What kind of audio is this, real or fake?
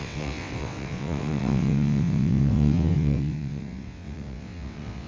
fake